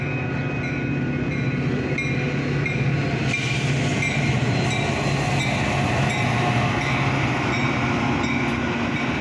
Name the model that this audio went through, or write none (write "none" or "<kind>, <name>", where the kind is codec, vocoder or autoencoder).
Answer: none